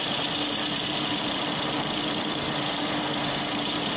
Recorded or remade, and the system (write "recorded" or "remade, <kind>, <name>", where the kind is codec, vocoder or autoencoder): recorded